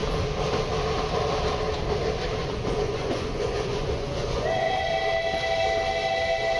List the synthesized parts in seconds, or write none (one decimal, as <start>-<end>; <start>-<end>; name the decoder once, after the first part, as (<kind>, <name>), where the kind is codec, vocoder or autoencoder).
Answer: 2.4-4.9 (vocoder, Vocos)